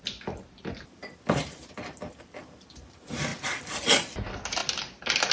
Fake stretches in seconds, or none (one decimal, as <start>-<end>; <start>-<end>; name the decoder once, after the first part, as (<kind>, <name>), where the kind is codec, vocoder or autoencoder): 1.0-2.7 (vocoder, BigVGAN v2); 3.3-3.8